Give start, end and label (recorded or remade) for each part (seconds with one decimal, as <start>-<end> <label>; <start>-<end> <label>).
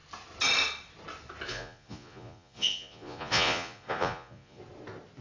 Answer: 0.0-1.5 recorded; 1.5-4.6 remade; 4.6-5.2 recorded